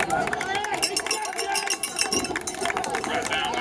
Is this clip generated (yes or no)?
no